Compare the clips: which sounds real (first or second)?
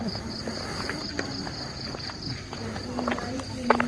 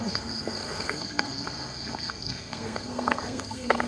first